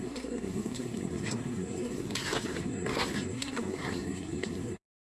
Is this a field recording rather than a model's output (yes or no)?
no